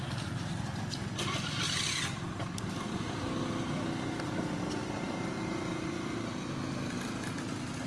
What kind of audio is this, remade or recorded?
recorded